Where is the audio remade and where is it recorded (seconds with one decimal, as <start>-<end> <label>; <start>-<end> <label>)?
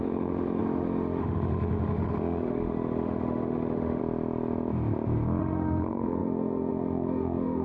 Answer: 0.0-4.0 remade; 4.0-5.4 recorded; 5.4-7.6 remade